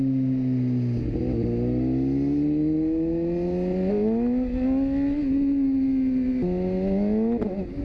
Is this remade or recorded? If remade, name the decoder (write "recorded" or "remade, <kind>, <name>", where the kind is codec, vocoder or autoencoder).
recorded